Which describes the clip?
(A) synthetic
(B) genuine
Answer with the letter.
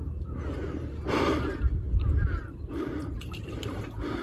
A